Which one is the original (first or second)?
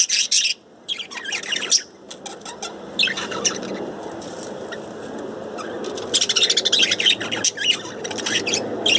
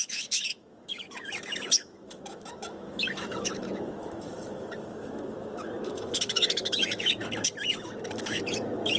first